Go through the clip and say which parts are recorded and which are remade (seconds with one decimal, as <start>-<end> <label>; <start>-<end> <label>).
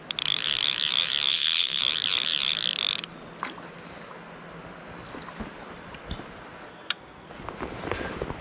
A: 0.0-1.3 recorded; 1.3-1.8 remade; 1.8-6.7 recorded; 6.7-7.3 remade; 7.3-8.4 recorded